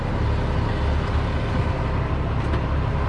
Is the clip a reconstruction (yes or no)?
no